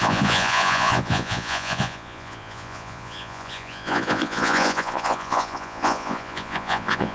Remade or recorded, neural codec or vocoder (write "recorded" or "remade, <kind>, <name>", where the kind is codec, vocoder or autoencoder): remade, vocoder, Vocos